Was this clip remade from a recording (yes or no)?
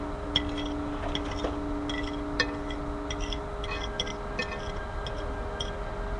no